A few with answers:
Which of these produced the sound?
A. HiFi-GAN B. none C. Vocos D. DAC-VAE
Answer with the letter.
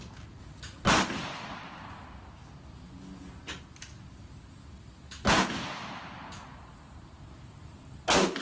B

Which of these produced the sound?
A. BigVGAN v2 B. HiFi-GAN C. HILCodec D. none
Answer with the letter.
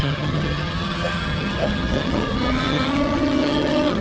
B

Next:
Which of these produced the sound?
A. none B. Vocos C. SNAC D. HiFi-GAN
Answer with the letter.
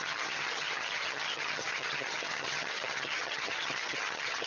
D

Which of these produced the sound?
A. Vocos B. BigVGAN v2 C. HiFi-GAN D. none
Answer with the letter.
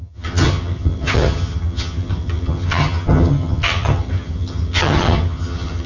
C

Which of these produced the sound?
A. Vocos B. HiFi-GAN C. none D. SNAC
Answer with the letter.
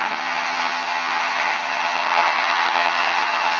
B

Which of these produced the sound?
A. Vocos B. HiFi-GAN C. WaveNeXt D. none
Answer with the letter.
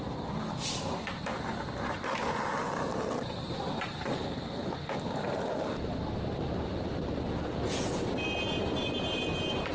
D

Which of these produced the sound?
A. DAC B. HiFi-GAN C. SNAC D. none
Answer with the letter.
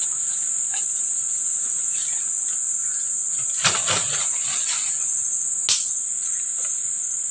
D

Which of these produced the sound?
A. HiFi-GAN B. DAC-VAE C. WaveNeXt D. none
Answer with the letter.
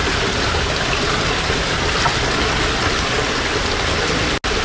D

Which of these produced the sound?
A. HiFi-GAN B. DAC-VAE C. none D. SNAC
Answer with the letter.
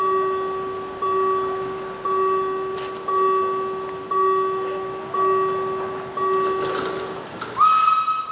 C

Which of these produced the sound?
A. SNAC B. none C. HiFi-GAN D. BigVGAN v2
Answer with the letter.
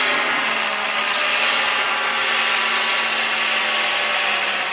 B